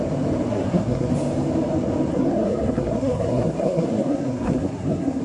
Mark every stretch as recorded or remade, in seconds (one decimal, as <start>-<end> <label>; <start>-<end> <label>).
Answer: 0.0-0.5 recorded; 0.5-1.1 remade; 1.1-2.1 recorded; 2.1-5.2 remade